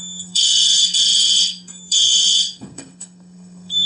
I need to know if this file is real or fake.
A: fake